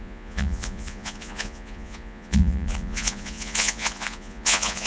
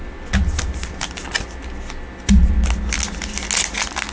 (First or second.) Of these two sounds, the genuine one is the second